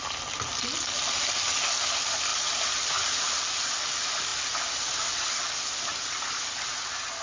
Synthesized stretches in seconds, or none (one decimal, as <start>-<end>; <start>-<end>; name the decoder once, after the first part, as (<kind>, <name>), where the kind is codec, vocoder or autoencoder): none